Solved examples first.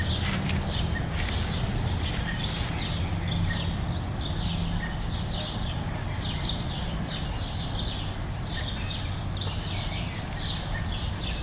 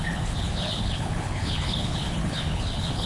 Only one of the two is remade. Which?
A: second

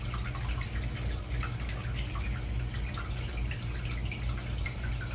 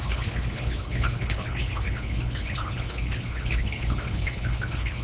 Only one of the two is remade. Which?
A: second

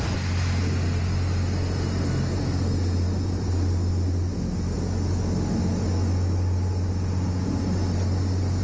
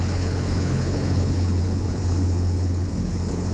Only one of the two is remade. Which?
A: second